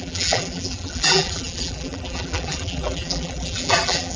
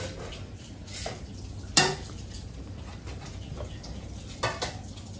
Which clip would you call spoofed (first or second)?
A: first